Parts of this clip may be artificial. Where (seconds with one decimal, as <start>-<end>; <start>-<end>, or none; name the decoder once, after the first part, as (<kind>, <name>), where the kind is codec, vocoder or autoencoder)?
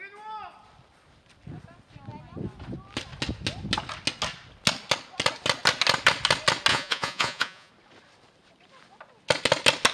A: 6.7-7.7 (vocoder, Vocos)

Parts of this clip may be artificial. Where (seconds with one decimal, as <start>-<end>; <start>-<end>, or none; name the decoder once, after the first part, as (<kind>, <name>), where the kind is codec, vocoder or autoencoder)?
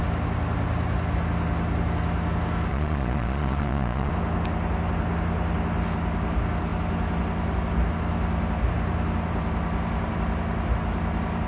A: 2.7-4.1 (vocoder, Vocos)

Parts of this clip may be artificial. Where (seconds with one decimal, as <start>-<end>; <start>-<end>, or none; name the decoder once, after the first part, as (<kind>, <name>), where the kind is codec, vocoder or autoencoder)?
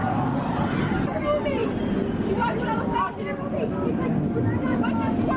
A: none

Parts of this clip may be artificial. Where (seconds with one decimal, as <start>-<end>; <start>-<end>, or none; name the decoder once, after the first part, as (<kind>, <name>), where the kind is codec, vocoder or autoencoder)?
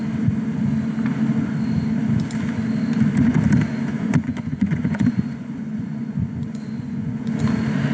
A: 3.9-7.4 (vocoder, Vocos)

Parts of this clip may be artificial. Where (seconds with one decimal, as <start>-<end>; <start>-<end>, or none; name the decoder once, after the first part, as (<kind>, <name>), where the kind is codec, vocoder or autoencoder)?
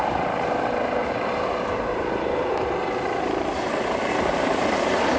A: none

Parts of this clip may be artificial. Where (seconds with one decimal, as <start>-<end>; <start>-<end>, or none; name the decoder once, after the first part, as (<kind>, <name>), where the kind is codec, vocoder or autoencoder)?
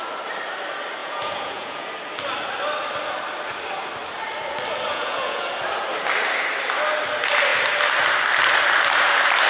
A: 1.0-1.9 (vocoder, Vocos); 4.9-5.5